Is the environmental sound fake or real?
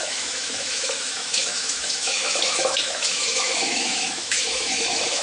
fake